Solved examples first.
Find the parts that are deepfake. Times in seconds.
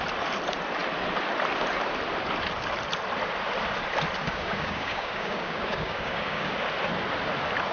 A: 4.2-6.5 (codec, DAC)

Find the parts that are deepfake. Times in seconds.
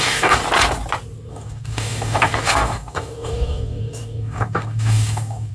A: 0.0-0.4 (codec, DAC); 1.3-5.5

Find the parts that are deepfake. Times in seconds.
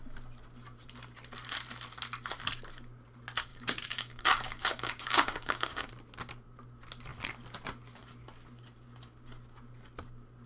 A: 3.5-5.9 (codec, DAC)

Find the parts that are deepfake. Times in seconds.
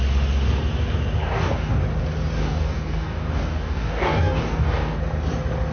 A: 1.2-1.8 (codec, DAC); 2.4-5.0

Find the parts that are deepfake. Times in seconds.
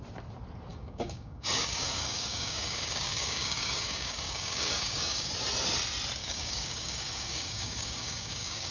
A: 0.7-5.3 (codec, DAC); 6.2-8.7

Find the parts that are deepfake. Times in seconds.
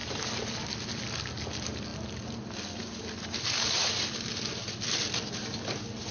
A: none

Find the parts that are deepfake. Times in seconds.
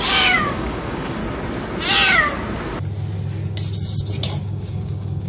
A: 0.0-1.2 (codec, DAC); 4.4-5.3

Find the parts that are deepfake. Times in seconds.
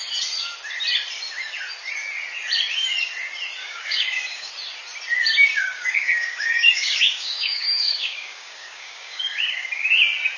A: 3.6-4.5 (codec, DAC); 5.6-9.9